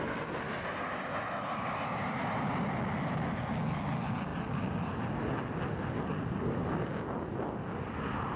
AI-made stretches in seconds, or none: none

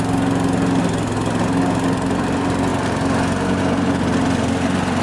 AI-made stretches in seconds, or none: none

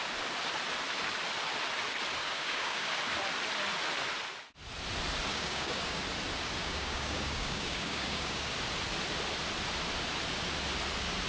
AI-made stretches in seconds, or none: 2.2-3.0 (codec, DAC); 5.3-6.0; 6.6-8.5